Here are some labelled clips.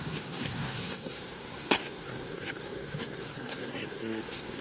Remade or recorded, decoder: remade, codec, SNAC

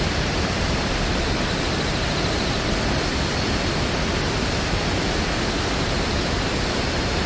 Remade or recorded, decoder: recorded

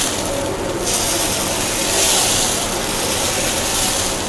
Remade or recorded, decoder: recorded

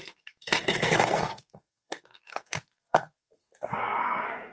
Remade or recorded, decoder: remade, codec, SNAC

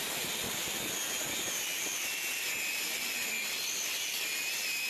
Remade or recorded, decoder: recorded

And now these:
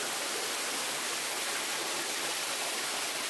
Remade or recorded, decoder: recorded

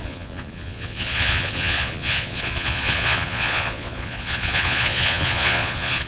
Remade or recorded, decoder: remade, vocoder, Vocos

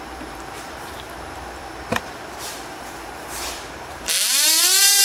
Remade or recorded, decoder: remade, vocoder, BigVGAN v2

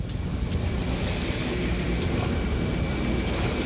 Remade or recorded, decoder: recorded